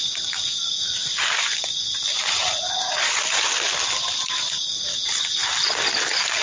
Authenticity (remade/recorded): recorded